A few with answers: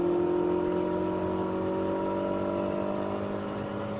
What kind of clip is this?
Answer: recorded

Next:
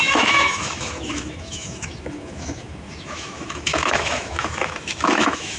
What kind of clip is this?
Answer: remade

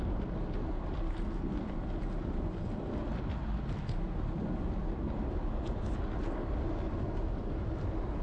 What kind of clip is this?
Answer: recorded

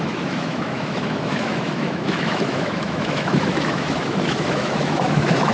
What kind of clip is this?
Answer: remade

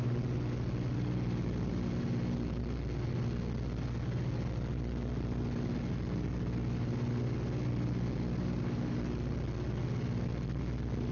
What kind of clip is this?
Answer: recorded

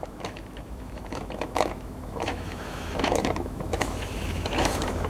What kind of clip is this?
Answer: remade